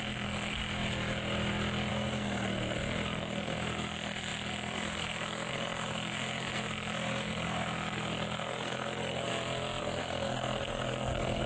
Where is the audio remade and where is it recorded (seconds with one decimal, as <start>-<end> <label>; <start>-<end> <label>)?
0.0-0.6 remade; 0.6-1.9 recorded; 1.9-9.3 remade; 9.3-9.8 recorded; 9.8-11.5 remade